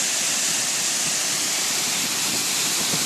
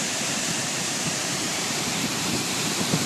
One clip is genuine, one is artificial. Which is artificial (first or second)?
second